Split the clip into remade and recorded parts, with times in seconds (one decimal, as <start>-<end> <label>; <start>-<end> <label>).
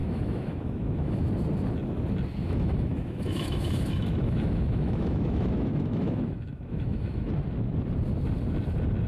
0.0-1.2 remade; 1.2-2.4 recorded; 2.4-7.3 remade; 7.3-9.1 recorded